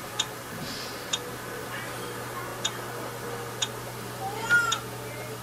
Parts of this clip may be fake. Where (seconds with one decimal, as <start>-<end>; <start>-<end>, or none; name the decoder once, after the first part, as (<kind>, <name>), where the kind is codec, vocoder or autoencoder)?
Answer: 0.0-1.1 (vocoder, BigVGAN v2); 2.5-4.2